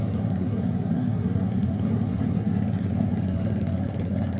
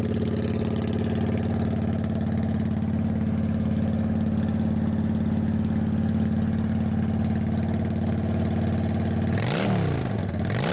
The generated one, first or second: first